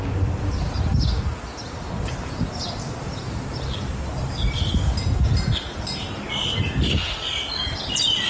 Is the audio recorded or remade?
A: recorded